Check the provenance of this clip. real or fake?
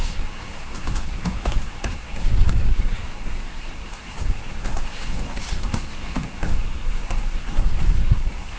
fake